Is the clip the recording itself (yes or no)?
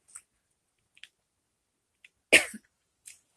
yes